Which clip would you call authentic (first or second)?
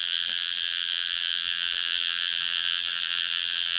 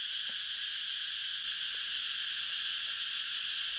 second